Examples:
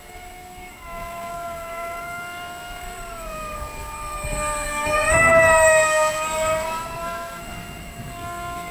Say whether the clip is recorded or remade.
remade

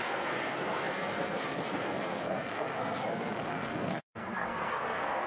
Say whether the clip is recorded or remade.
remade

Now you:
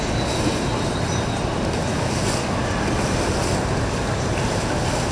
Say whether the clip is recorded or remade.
recorded